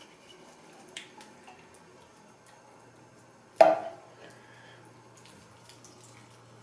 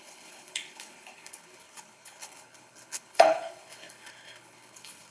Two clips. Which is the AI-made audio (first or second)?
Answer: second